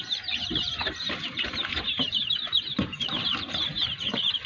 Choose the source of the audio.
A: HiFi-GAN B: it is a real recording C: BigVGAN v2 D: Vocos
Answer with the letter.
C